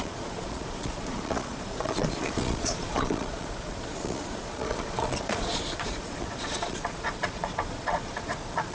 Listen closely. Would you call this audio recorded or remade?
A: remade